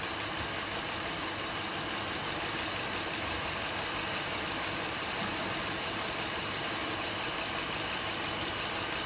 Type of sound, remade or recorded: recorded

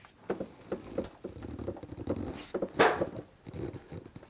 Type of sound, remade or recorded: recorded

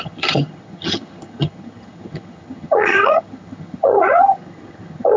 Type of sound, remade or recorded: remade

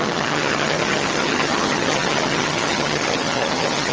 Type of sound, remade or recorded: remade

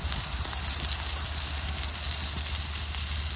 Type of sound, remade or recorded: recorded